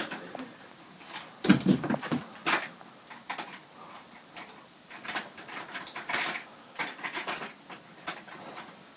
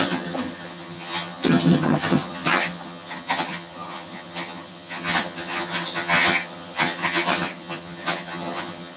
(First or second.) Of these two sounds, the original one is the first